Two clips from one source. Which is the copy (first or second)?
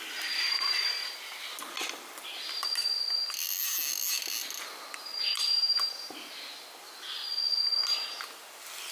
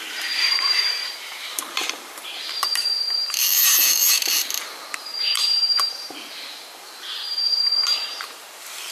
second